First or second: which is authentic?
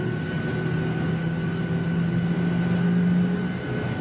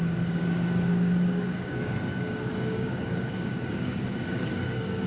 first